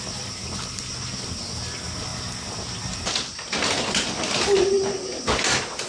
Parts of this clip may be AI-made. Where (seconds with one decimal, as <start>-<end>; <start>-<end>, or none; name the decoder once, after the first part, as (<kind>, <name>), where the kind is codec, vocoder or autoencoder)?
none

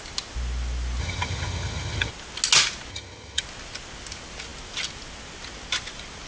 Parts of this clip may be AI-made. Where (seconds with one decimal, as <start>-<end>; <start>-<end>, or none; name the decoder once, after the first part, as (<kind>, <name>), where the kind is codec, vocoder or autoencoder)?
1.0-2.1 (vocoder, HiFi-GAN); 2.9-3.4

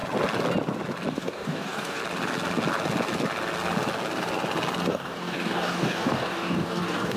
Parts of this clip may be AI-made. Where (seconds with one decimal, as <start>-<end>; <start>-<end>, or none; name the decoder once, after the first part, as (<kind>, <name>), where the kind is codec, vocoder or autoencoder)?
1.1-2.0 (codec, DAC); 4.9-7.2

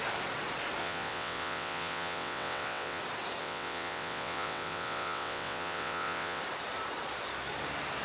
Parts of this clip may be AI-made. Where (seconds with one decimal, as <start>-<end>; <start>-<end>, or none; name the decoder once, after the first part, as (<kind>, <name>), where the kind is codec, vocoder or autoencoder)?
0.8-3.0 (vocoder, WaveNeXt); 3.4-6.4

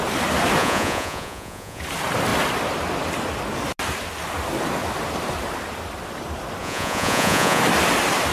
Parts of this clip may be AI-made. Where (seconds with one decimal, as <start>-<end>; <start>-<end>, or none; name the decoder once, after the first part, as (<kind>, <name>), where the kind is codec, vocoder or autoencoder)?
0.6-1.8 (vocoder, Vocos); 6.6-7.6